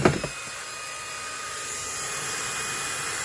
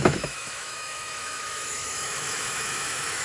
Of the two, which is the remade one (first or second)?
second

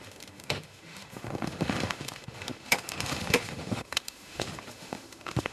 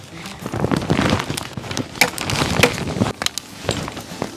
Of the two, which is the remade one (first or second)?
first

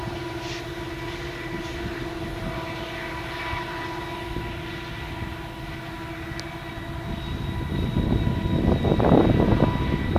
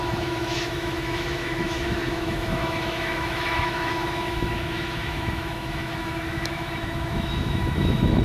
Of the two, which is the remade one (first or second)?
second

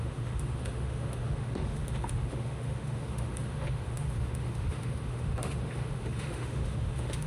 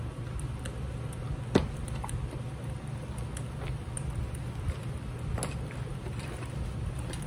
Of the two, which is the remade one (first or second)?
first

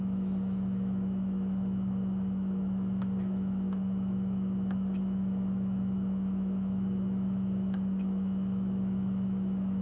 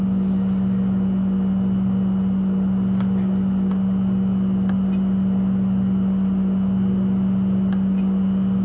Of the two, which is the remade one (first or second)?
first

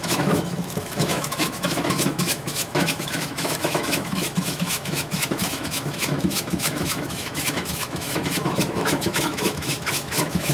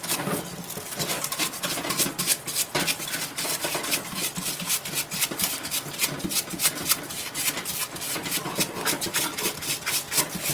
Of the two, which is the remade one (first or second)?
first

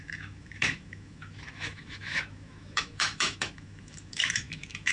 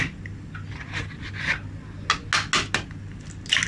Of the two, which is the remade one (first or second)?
first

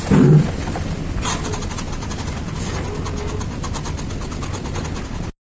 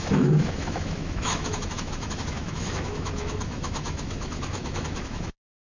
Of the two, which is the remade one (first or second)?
second